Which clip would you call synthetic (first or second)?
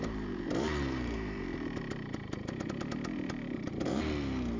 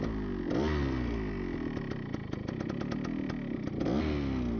first